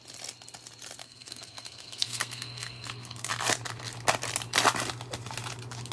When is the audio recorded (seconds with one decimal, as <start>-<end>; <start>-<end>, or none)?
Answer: 0.0-1.0; 3.3-5.9